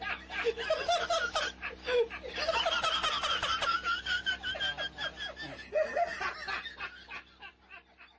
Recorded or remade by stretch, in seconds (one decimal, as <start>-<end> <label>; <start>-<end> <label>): 0.0-3.7 recorded; 3.7-4.3 remade; 4.3-8.2 recorded